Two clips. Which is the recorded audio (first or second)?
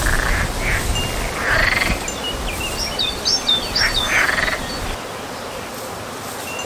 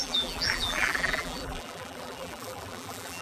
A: first